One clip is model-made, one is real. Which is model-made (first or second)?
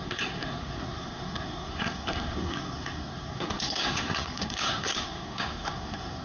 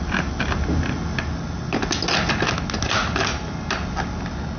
first